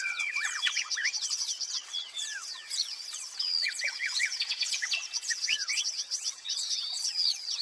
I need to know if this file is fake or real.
fake